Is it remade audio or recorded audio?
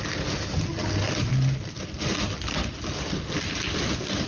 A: recorded